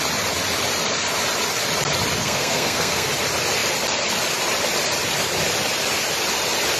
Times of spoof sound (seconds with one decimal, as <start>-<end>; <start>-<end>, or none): 2.2-3.1